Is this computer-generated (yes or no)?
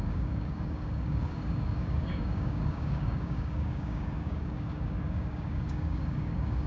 yes